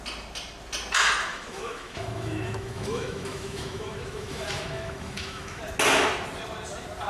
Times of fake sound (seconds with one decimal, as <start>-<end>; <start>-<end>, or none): 1.3-5.6